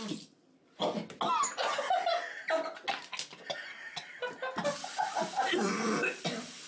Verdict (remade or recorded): recorded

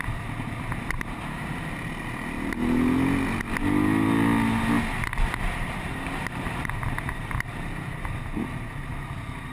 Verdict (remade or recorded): recorded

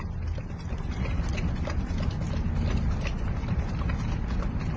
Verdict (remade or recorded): recorded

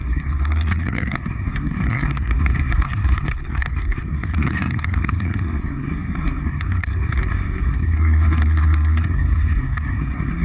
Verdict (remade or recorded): remade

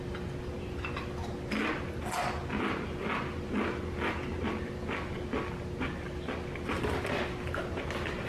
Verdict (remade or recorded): recorded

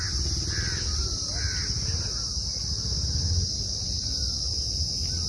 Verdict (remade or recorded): recorded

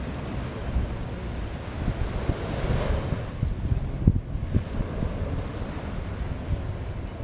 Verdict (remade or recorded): recorded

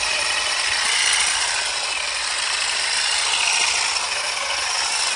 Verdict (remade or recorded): recorded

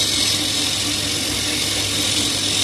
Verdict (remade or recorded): recorded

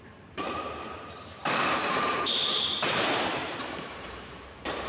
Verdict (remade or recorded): remade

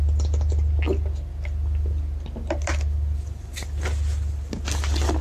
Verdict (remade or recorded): recorded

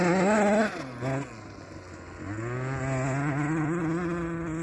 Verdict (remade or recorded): recorded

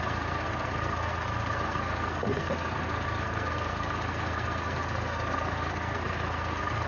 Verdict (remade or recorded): remade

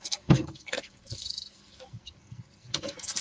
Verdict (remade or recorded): remade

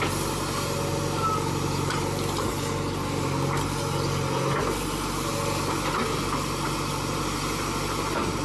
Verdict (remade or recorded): recorded